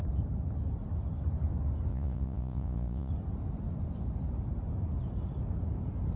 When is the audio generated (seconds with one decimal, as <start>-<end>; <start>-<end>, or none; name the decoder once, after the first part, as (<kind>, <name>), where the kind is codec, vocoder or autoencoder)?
1.9-3.1 (vocoder, Vocos)